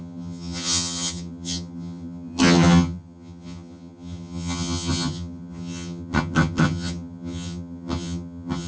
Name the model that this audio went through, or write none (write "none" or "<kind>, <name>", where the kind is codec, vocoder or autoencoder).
vocoder, HiFi-GAN